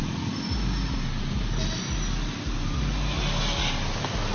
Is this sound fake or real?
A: real